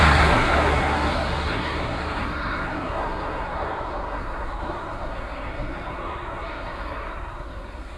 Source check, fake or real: fake